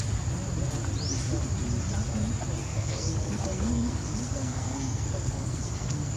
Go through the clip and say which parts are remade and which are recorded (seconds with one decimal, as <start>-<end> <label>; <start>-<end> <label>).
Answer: 0.0-2.6 recorded; 2.6-6.2 remade